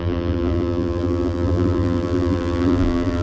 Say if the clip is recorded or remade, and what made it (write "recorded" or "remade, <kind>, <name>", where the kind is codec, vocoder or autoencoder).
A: remade, vocoder, BigVGAN v2